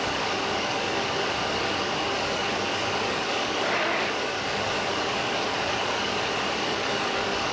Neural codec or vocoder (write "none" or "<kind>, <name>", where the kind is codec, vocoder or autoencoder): codec, DAC